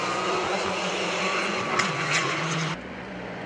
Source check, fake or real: fake